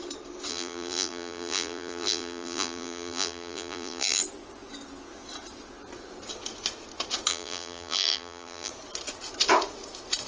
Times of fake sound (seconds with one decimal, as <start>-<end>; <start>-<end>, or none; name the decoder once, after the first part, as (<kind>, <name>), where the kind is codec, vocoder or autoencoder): 0.5-4.2 (vocoder, BigVGAN v2); 7.3-8.7